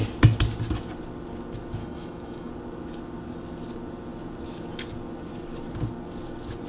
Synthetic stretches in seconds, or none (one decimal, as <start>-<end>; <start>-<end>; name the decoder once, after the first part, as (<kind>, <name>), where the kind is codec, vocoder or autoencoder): 1.8-2.5 (autoencoder, DAC-VAE)